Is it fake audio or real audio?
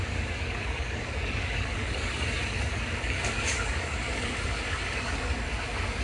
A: fake